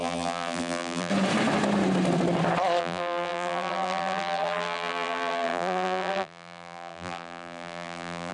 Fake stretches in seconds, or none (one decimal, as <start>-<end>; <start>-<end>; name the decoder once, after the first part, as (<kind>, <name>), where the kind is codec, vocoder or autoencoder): 0.0-1.1 (vocoder, BigVGAN v2); 2.8-8.3